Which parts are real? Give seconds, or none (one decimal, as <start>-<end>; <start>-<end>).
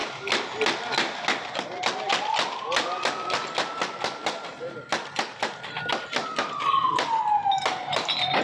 0.0-8.4